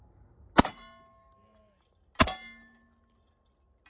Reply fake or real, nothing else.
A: real